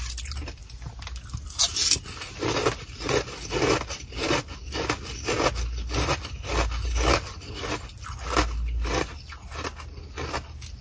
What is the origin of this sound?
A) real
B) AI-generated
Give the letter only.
A